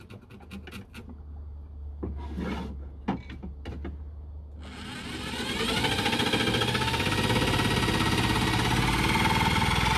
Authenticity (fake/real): real